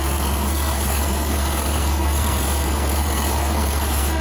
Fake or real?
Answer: fake